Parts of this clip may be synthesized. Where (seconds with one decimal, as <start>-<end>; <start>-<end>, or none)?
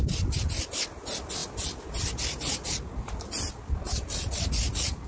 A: none